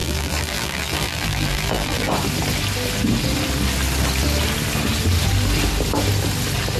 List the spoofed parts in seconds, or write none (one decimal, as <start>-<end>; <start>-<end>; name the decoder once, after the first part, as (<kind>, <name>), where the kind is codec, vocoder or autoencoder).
0.0-2.1 (vocoder, BigVGAN v2)